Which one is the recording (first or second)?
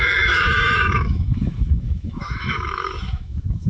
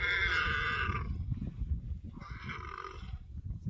second